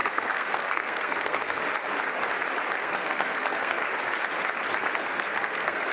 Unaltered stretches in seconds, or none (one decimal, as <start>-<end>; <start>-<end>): 1.6-2.8; 3.8-4.8